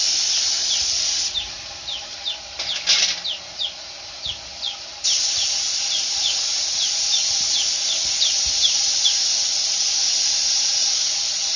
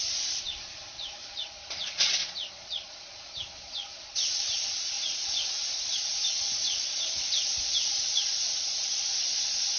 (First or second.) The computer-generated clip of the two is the second